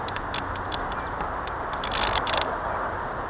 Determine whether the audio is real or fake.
real